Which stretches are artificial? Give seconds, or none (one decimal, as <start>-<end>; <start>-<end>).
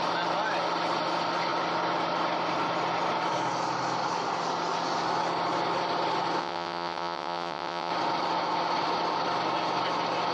6.4-7.9